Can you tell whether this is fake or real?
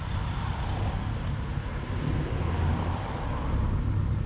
real